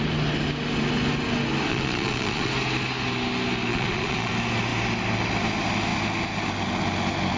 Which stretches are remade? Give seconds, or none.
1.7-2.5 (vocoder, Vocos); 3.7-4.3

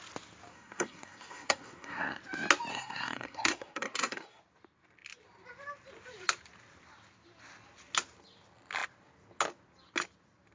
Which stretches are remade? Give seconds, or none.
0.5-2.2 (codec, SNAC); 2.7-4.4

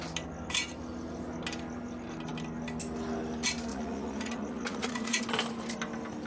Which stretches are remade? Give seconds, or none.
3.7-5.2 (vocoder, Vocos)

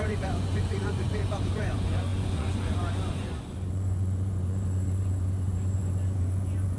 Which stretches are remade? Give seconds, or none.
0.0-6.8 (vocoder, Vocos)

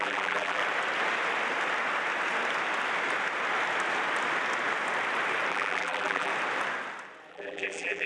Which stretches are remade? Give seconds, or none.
0.0-0.6 (vocoder, BigVGAN v2); 5.5-6.3; 7.3-8.1

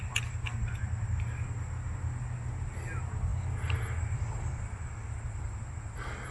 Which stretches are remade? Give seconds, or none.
none

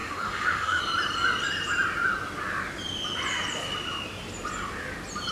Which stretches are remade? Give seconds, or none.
0.0-0.8 (autoencoder, DAC-VAE)

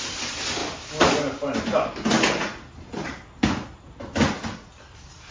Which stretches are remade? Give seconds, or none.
none